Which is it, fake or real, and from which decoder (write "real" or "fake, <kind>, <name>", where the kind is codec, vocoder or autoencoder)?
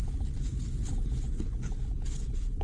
fake, codec, HILCodec